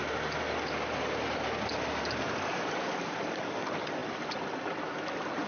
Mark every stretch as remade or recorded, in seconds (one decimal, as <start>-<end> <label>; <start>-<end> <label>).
0.0-5.5 recorded